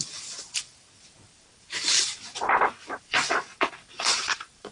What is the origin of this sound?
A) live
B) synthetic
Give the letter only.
B